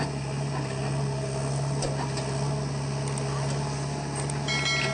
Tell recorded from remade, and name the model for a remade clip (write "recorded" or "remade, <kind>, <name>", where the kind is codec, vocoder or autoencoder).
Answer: recorded